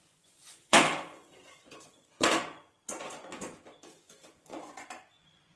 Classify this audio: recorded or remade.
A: remade